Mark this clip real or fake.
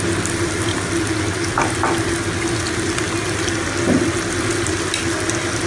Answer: real